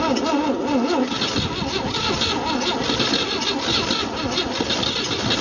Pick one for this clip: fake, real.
real